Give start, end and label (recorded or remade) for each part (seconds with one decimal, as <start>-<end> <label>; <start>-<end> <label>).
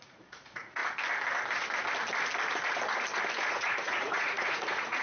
0.0-0.8 remade; 0.8-3.5 recorded; 3.5-5.0 remade